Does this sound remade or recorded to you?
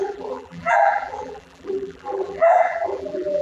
remade